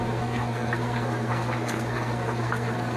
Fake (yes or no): yes